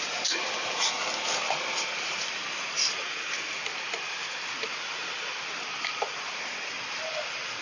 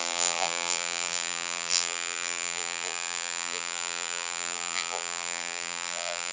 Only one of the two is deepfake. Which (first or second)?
second